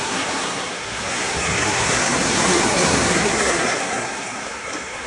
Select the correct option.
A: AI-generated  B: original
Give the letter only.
A